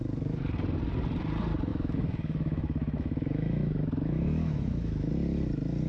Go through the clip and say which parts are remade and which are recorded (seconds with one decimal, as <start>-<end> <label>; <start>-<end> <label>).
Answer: 0.0-1.7 recorded; 1.7-5.1 remade; 5.1-5.9 recorded